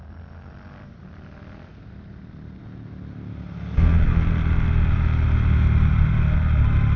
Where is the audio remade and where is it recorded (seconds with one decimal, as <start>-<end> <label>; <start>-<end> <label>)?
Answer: 0.0-7.0 recorded